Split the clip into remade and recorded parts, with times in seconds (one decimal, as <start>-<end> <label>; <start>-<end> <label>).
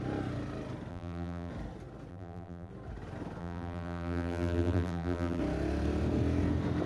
0.0-0.9 recorded; 0.9-1.5 remade; 1.5-2.1 recorded; 2.1-2.7 remade; 2.7-3.4 recorded; 3.4-5.4 remade; 5.4-6.9 recorded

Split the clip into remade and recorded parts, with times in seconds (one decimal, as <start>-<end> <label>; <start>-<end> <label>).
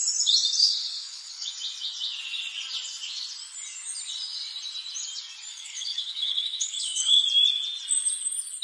0.0-0.6 recorded; 0.6-1.5 remade; 1.5-5.5 recorded; 5.5-7.2 remade; 7.2-8.6 recorded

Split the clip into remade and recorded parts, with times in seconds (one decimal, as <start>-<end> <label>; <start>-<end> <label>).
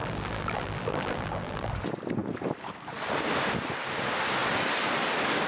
0.0-1.7 remade; 1.7-5.5 recorded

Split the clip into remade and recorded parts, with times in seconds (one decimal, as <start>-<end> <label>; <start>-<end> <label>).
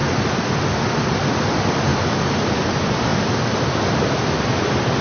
0.0-5.0 recorded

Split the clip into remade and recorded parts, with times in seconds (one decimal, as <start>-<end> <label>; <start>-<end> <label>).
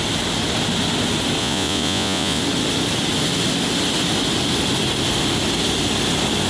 0.0-1.4 recorded; 1.4-2.4 remade; 2.4-6.5 recorded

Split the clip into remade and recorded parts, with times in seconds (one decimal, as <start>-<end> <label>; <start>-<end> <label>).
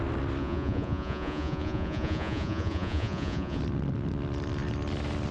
0.0-0.4 recorded; 0.4-3.6 remade; 3.6-5.3 recorded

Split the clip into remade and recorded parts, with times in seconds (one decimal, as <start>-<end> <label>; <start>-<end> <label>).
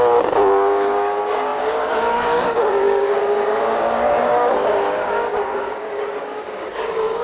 0.0-7.2 remade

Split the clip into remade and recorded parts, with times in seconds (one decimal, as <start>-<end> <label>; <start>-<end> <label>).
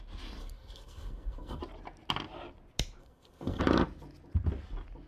0.0-0.4 recorded; 0.4-1.6 remade; 1.6-3.0 recorded; 3.0-3.6 remade; 3.6-5.1 recorded